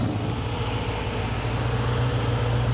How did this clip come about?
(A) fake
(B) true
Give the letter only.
B